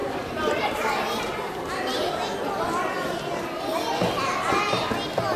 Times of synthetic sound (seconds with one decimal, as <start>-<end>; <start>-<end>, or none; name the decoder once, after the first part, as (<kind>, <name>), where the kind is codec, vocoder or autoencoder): 0.0-1.9 (vocoder, BigVGAN v2)